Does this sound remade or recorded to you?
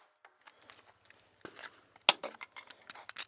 recorded